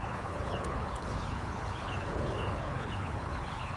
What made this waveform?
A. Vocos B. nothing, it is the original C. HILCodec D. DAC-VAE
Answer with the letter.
C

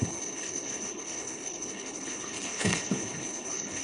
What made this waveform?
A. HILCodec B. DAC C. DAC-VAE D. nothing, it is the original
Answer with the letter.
A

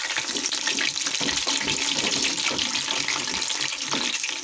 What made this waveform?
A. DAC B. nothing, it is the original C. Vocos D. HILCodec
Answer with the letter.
B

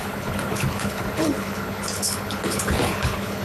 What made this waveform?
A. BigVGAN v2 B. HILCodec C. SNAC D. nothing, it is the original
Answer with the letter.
B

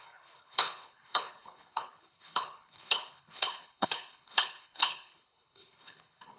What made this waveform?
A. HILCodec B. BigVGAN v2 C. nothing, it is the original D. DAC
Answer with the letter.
A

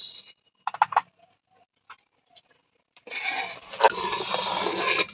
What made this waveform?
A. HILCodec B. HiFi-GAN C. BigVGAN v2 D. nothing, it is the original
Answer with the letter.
D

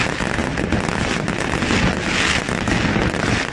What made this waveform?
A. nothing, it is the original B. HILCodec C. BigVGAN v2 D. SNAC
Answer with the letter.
A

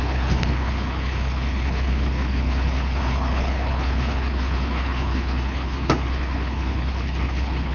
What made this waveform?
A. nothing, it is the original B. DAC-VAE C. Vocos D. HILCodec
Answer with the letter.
D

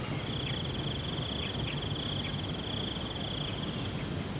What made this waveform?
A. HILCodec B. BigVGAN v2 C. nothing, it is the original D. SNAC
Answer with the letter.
C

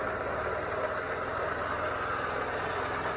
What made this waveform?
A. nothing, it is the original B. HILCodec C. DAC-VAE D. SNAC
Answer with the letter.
A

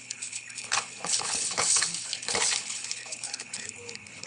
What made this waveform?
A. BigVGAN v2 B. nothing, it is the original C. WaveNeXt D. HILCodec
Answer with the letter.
D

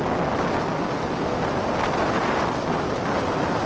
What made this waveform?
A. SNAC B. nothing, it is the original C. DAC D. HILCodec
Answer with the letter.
B